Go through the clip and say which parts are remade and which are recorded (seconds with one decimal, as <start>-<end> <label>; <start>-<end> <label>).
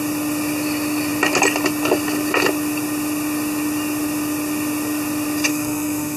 0.0-5.5 recorded; 5.5-6.2 remade